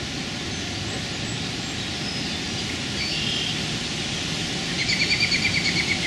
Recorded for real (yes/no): yes